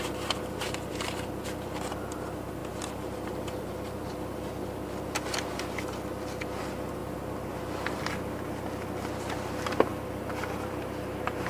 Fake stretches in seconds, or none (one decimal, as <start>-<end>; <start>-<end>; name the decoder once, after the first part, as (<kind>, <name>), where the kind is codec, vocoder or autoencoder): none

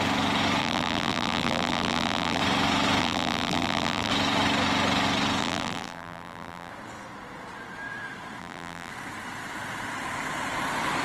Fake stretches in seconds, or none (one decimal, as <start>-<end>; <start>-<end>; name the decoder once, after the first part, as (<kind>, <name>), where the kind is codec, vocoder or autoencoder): 0.6-2.4 (vocoder, BigVGAN v2); 3.0-4.1; 5.4-6.7; 8.4-8.9

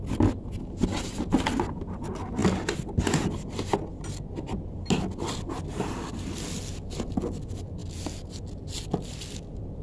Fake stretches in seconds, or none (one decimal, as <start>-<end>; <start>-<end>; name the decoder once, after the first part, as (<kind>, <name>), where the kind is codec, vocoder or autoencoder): none

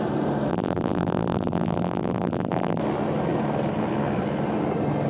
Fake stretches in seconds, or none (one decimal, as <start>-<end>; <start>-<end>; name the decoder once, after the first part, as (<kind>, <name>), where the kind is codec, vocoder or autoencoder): 0.5-2.8 (vocoder, BigVGAN v2)

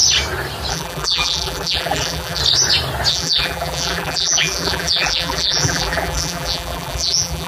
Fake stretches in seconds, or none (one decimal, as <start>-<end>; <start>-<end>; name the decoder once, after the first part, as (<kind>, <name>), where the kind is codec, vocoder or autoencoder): 0.7-2.4 (vocoder, BigVGAN v2); 3.1-7.5

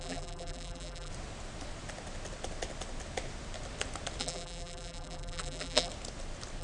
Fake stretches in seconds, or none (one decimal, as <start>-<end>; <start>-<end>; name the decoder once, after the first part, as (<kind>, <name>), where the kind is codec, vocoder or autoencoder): 0.0-1.1 (vocoder, BigVGAN v2); 4.2-5.9